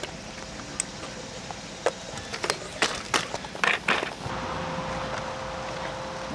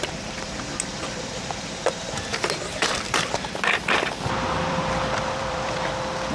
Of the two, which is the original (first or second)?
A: first